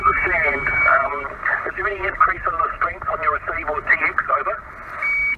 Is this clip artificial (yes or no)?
no